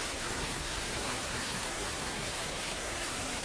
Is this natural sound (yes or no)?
no